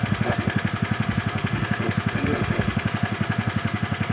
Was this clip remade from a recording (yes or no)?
yes